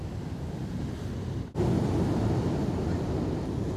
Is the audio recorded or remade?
recorded